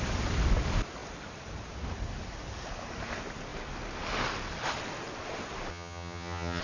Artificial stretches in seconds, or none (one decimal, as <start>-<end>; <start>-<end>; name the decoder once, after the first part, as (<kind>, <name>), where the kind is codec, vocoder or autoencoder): 5.7-6.6 (vocoder, HiFi-GAN)